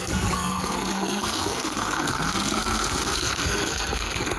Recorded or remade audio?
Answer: remade